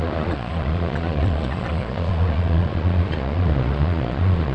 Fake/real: fake